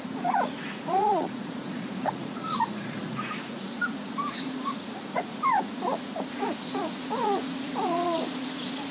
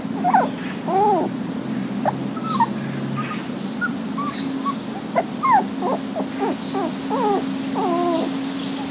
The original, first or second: second